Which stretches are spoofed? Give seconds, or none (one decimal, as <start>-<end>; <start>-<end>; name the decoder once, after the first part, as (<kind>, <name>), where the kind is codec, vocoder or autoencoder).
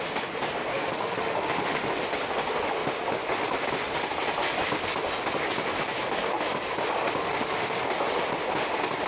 0.7-1.9 (autoencoder, DAC-VAE); 7.2-7.8